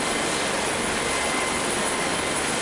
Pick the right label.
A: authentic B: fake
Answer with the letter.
A